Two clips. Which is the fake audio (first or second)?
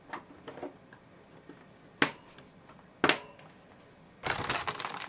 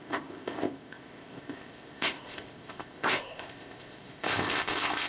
second